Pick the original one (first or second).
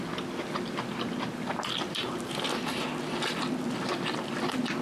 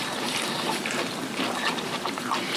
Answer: first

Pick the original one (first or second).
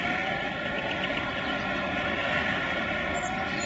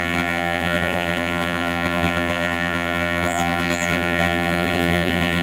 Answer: first